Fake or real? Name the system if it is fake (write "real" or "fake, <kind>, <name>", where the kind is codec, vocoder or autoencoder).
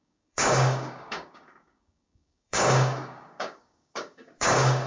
fake, codec, DAC